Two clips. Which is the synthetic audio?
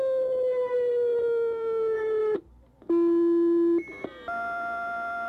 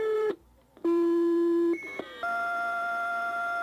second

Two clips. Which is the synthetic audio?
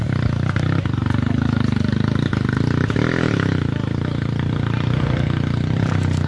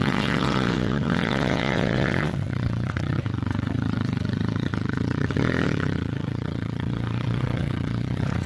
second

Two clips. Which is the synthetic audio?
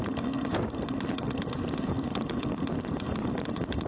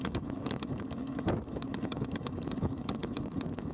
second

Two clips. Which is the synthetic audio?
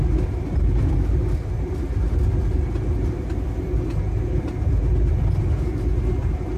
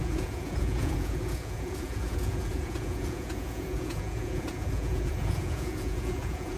second